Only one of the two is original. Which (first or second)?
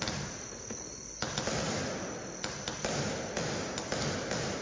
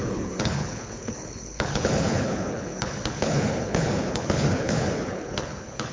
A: first